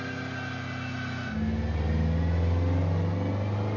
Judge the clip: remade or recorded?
recorded